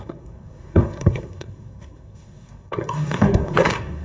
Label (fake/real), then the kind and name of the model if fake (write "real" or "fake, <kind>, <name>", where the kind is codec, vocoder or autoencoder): fake, codec, SNAC